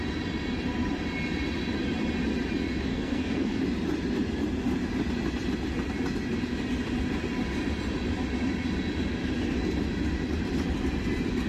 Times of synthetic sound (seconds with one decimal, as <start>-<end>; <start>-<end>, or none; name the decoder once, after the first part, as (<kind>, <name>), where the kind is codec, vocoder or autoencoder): 2.9-3.6 (codec, SNAC)